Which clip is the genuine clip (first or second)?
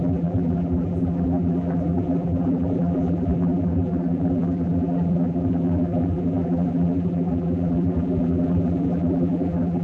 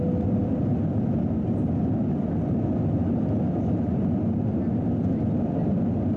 second